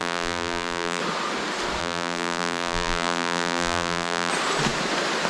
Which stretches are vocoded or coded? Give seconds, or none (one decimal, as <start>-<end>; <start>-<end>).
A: 0.0-1.0; 1.8-4.3